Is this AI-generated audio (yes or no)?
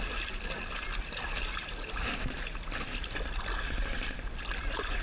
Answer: no